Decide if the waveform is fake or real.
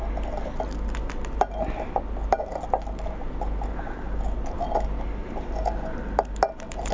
real